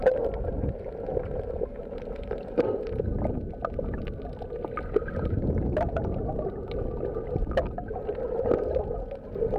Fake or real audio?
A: real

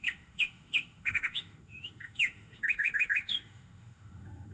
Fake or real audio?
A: fake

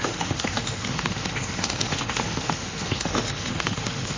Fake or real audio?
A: fake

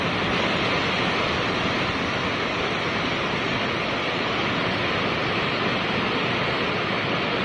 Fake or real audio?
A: real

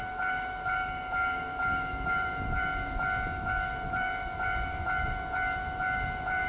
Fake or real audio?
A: fake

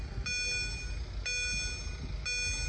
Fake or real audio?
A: real